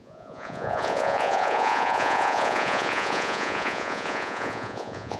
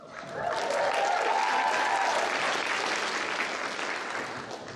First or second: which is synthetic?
first